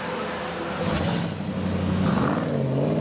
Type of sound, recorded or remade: recorded